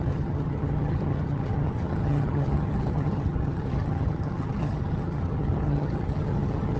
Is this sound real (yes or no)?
no